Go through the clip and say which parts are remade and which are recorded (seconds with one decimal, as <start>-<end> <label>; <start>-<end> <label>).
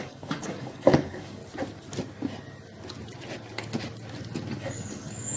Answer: 0.0-1.4 remade; 1.4-4.6 recorded; 4.6-5.4 remade